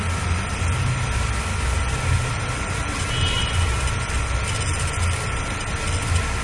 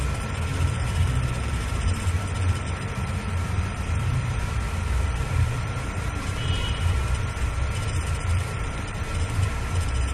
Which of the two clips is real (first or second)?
first